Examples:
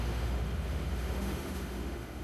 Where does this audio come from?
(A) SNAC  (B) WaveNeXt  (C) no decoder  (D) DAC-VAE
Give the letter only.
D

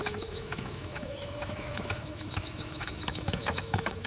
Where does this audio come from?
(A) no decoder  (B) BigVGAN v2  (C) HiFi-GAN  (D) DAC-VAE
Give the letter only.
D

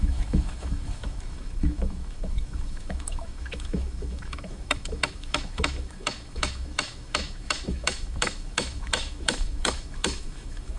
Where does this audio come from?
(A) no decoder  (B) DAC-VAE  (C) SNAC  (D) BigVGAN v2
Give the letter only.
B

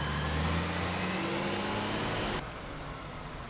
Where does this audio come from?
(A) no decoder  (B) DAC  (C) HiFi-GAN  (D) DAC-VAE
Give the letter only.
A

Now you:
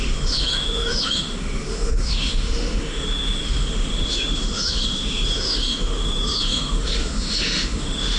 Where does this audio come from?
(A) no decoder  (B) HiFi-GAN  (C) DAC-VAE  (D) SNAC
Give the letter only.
C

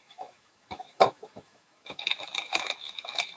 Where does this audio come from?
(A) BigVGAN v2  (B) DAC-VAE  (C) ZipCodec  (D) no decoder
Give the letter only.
B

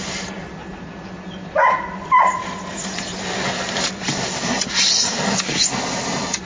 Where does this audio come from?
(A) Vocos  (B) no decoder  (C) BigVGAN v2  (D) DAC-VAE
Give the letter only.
B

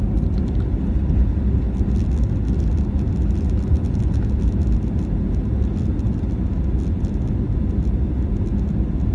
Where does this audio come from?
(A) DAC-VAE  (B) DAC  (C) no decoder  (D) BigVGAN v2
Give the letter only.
C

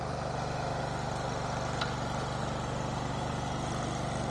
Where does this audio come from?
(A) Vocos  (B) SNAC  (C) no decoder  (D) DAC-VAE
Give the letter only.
C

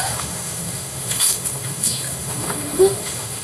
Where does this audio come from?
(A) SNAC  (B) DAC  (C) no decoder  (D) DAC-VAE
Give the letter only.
D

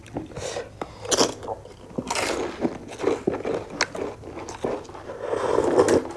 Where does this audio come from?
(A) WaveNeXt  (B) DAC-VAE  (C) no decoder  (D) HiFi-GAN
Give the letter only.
C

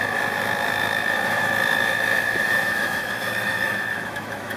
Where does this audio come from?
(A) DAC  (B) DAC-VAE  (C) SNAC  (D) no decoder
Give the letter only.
B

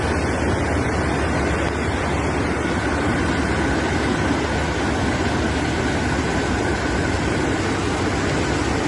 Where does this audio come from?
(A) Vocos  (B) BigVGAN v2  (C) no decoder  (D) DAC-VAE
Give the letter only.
C